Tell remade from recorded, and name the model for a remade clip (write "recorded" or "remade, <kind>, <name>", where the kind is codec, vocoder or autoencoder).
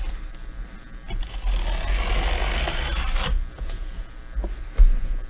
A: recorded